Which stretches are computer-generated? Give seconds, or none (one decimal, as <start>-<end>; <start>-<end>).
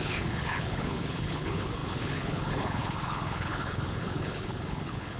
0.0-5.2